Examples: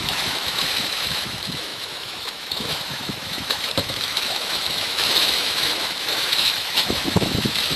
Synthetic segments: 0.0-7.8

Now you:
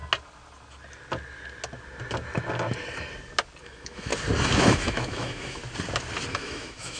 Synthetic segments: 3.6-4.1; 4.6-5.6; 6.3-7.0

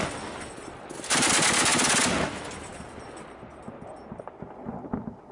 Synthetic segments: none

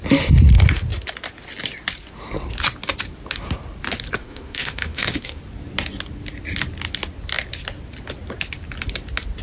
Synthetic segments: 4.2-5.4